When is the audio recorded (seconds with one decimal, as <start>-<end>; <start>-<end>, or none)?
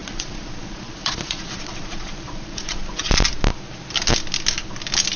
3.1-5.2